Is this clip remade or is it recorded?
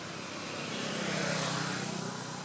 recorded